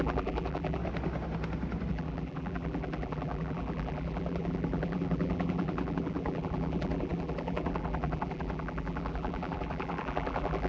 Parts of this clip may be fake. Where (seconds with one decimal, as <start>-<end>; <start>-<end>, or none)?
0.0-0.8; 1.9-10.7